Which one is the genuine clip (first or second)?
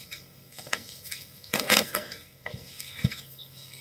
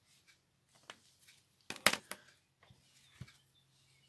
second